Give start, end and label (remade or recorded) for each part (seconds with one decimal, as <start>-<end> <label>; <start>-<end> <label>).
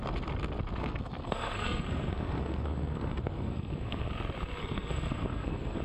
0.0-0.8 recorded; 0.8-4.1 remade; 4.1-4.6 recorded; 4.6-5.8 remade